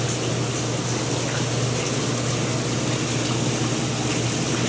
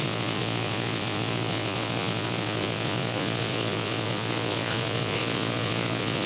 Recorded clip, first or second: first